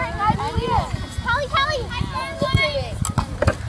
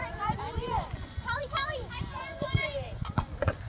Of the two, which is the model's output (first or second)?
second